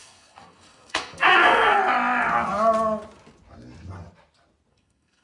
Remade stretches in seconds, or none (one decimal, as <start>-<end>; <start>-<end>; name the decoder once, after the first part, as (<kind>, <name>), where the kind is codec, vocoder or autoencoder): 0.0-1.8 (codec, SNAC); 4.7-5.2